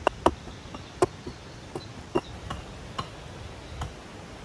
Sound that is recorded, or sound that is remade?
recorded